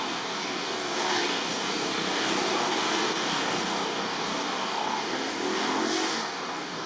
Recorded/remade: remade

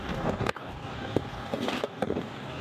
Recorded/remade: remade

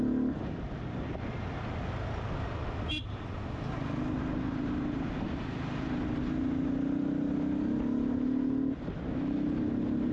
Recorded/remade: recorded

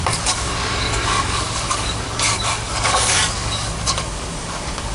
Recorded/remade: remade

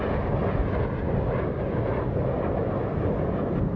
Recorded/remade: recorded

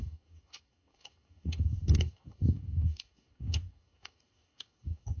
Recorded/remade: remade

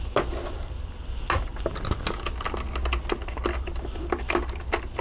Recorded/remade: recorded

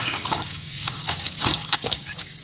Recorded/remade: remade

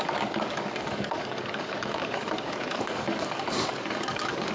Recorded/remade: remade